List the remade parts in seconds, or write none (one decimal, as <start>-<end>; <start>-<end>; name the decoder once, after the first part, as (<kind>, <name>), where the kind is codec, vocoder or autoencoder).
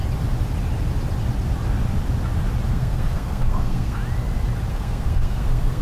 2.7-4.0 (codec, SNAC); 4.7-5.8